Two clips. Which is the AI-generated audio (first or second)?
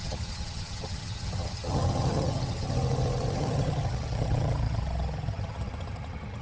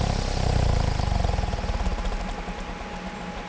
first